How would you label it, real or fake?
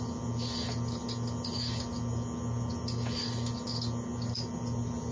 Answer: real